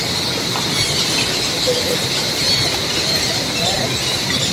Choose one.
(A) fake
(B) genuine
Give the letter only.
B